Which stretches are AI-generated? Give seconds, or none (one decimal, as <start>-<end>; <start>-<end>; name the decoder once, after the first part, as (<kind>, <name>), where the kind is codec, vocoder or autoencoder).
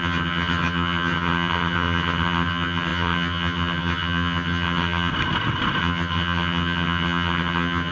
0.0-5.1 (vocoder, HiFi-GAN); 5.8-7.9